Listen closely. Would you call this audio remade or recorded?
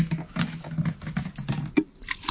recorded